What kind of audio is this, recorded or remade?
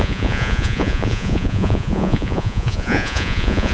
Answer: remade